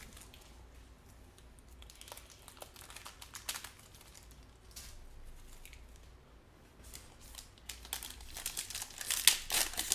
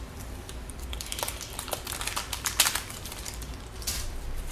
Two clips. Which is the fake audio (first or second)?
second